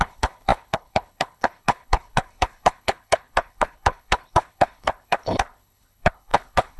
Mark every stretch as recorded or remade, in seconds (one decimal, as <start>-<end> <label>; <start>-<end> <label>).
0.0-6.8 remade